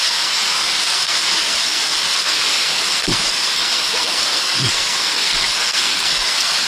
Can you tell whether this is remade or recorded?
remade